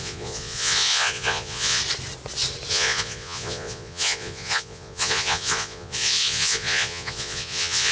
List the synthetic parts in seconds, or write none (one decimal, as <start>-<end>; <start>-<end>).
0.0-1.8; 2.7-7.9